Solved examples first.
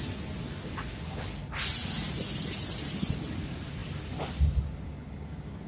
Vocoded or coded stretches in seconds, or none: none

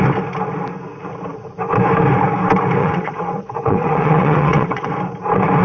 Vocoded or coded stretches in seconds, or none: 2.8-4.9

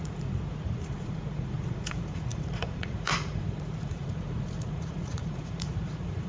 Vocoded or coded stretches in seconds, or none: 0.0-6.3